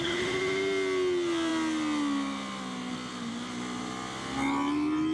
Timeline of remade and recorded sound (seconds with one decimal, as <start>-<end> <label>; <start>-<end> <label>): 0.0-5.1 recorded